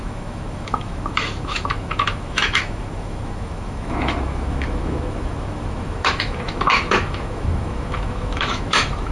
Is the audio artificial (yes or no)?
yes